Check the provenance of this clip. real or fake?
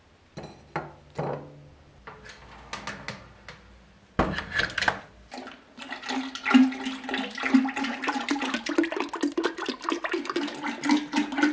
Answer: real